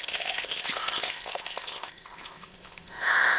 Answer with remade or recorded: remade